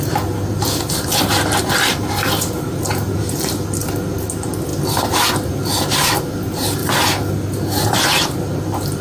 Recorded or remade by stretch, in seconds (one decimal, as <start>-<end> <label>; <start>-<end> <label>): 0.0-9.0 recorded

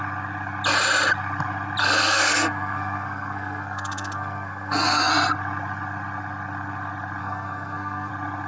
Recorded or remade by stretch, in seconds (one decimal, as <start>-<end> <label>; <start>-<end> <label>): 0.0-1.8 recorded; 1.8-5.1 remade; 5.1-7.2 recorded; 7.2-8.1 remade; 8.1-8.5 recorded

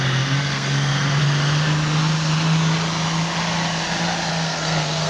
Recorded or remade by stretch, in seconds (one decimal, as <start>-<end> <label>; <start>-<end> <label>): 0.0-1.2 remade; 1.2-4.3 recorded; 4.3-5.1 remade

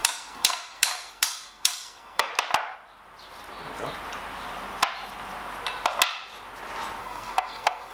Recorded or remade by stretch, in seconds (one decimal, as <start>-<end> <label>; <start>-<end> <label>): 0.0-2.3 remade; 2.3-7.0 recorded; 7.0-7.9 remade

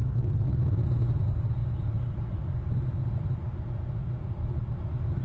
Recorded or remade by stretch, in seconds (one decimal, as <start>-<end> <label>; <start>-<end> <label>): 0.0-0.6 remade; 0.6-5.2 recorded

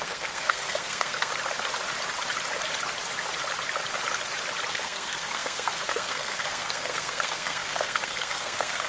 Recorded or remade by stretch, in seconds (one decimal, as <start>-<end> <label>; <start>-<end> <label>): 0.0-1.3 remade; 1.3-4.7 recorded; 4.7-8.9 remade

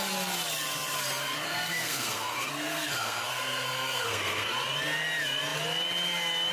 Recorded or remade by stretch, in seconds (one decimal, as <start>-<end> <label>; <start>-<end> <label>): 0.0-1.2 recorded; 1.2-4.5 remade; 4.5-6.5 recorded